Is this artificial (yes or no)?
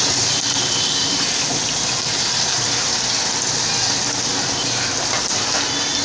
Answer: no